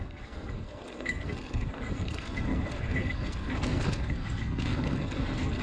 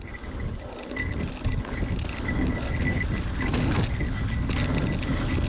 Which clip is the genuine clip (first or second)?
second